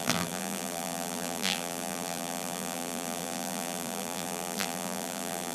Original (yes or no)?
no